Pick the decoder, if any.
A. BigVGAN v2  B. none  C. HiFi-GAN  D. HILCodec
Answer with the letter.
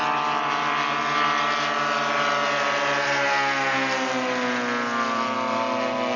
B